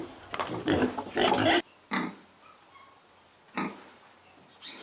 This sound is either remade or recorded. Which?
recorded